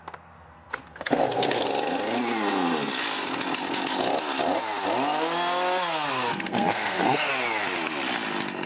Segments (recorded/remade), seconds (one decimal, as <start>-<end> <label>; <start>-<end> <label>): 0.0-1.7 remade; 1.7-6.1 recorded; 6.1-7.3 remade; 7.3-8.7 recorded